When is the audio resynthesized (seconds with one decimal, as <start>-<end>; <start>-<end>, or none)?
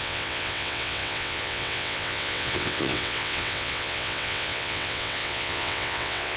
0.0-6.4